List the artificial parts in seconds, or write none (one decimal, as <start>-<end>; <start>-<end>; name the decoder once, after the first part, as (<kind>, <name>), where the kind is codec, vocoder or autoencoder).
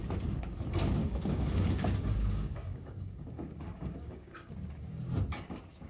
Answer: 1.0-4.5 (codec, DAC)